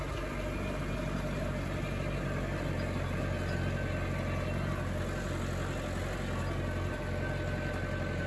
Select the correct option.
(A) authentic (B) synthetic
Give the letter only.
A